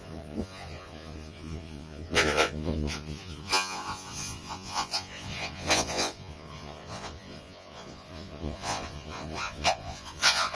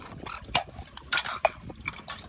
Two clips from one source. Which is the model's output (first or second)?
first